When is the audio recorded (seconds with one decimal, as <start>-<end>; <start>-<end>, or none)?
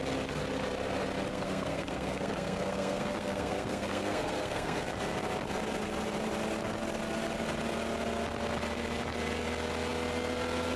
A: 0.0-1.3; 4.8-10.8